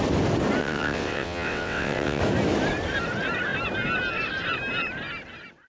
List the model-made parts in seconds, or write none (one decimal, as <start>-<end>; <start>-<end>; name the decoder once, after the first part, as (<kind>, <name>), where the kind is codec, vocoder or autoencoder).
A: 0.6-2.2 (vocoder, WaveNeXt)